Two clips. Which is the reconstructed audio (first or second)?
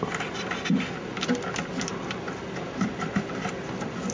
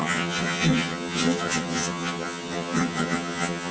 second